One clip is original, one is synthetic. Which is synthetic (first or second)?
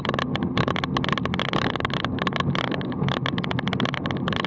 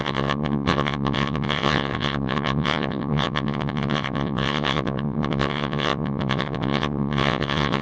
second